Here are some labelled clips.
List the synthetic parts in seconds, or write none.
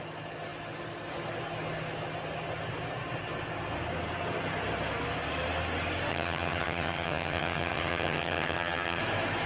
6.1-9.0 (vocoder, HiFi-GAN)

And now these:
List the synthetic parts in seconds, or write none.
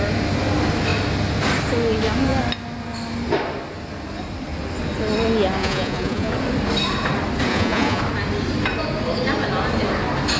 5.6-6.3 (vocoder, Vocos); 7.5-8.0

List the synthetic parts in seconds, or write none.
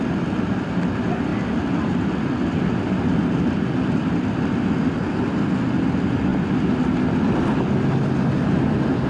none